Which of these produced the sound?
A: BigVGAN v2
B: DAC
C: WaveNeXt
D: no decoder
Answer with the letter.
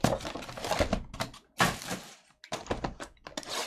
D